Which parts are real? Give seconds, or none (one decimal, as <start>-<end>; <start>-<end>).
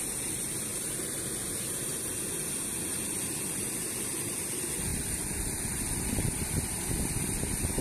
0.0-4.9; 6.8-7.8